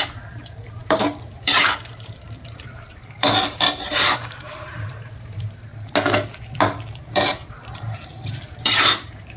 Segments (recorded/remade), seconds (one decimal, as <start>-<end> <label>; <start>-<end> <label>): 0.0-5.7 remade; 5.7-7.0 recorded; 7.0-9.4 remade